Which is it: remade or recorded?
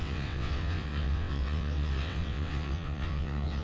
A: remade